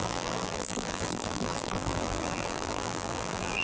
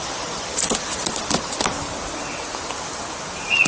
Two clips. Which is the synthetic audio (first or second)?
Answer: first